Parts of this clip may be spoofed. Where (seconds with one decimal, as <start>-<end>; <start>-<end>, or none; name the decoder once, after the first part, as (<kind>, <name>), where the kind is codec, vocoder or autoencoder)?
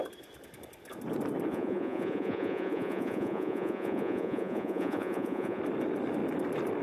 1.5-5.6 (vocoder, Vocos)